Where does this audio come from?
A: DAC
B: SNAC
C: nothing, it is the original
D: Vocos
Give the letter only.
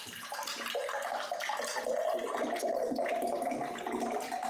C